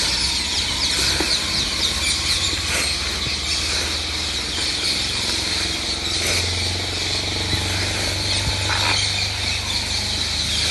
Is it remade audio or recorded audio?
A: recorded